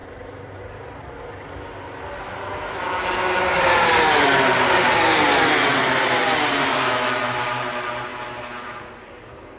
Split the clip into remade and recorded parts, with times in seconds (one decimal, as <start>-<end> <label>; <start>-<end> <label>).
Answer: 0.0-9.6 recorded